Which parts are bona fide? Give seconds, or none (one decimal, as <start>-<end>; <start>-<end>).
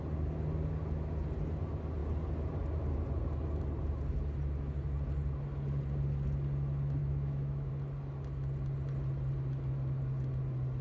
0.0-7.0; 7.7-10.8